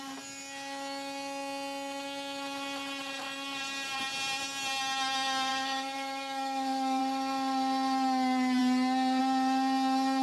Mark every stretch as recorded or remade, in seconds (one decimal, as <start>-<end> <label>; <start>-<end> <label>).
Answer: 0.0-5.5 recorded; 5.5-7.0 remade; 7.0-10.2 recorded